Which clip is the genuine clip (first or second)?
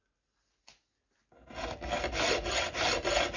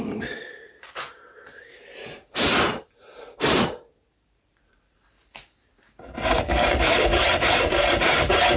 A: first